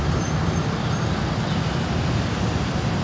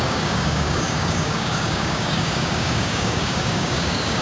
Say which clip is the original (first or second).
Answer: first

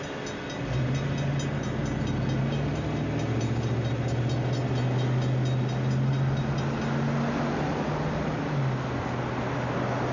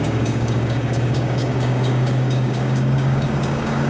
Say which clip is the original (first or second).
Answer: first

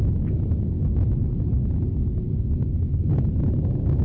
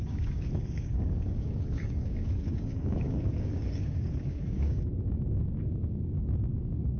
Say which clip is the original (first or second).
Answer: first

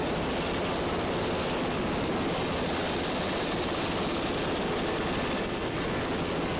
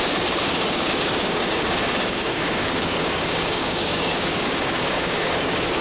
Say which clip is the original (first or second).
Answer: first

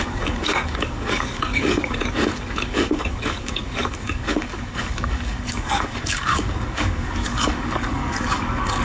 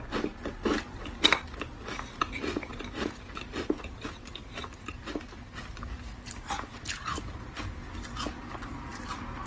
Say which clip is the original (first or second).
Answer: second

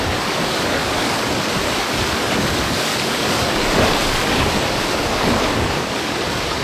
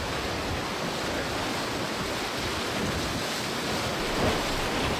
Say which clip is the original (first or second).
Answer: second